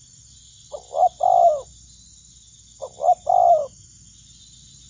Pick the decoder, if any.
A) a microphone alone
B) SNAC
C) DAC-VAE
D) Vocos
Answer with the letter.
A